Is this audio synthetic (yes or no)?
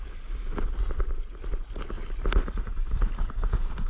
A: no